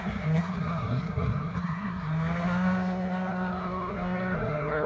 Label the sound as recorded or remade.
remade